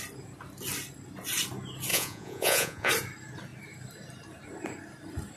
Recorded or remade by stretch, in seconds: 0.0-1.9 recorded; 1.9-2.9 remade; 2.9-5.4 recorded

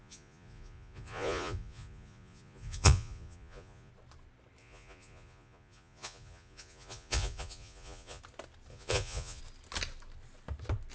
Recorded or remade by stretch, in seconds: 0.0-3.9 remade; 3.9-4.6 recorded; 4.6-8.2 remade; 8.2-8.7 recorded; 8.7-9.4 remade; 9.4-10.9 recorded

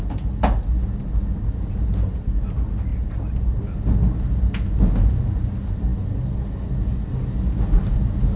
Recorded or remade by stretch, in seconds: 0.0-8.4 recorded